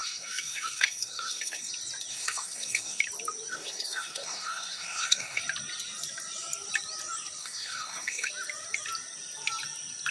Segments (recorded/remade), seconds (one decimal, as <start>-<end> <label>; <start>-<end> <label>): 0.0-1.7 remade; 1.7-2.1 recorded; 2.1-3.0 remade; 3.0-3.5 recorded; 3.5-5.4 remade; 5.4-7.4 recorded; 7.4-8.3 remade; 8.3-10.1 recorded